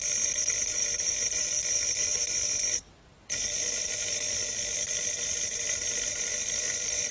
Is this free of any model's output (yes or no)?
yes